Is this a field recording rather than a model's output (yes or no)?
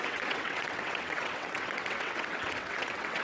no